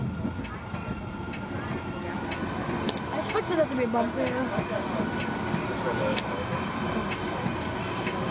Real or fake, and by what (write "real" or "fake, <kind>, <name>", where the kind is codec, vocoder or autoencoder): real